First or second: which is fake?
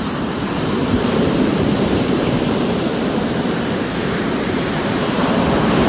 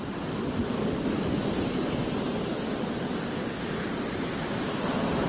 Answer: first